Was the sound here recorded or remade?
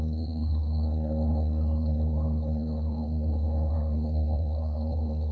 remade